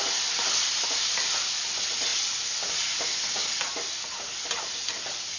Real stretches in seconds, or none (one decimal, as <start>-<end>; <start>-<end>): 0.0-5.4